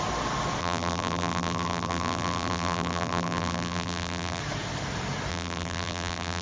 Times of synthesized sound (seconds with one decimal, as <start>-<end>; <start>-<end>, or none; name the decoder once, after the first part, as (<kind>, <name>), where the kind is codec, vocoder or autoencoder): 0.6-4.4 (vocoder, BigVGAN v2); 5.3-6.4